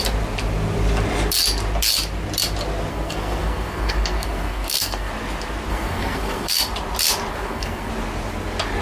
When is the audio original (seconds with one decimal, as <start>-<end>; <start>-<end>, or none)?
0.0-2.9; 5.1-5.7; 6.5-7.3; 7.9-8.8